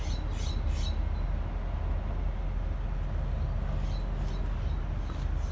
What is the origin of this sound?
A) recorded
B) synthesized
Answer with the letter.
A